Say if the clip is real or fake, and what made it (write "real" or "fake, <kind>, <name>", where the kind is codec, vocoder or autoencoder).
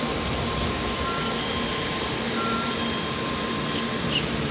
real